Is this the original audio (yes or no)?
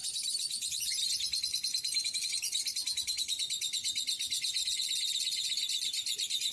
no